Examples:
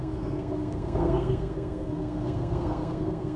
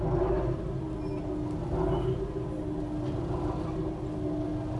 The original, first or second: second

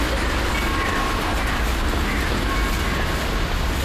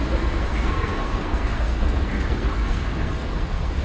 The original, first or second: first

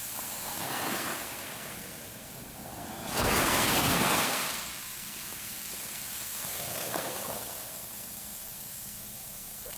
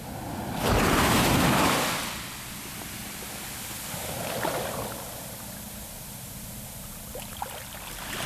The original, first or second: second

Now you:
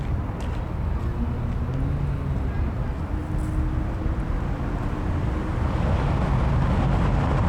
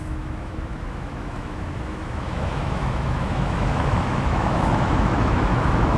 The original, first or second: first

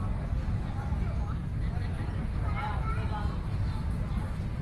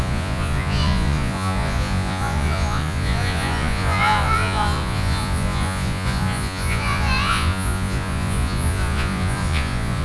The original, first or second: first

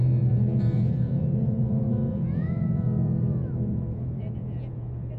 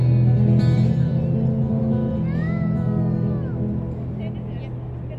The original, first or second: second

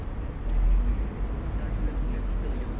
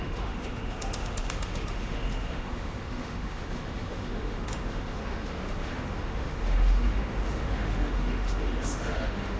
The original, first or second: first